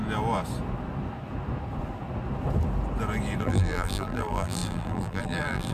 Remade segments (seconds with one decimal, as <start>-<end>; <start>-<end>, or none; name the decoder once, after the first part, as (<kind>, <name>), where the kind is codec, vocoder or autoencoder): 3.4-5.7 (vocoder, BigVGAN v2)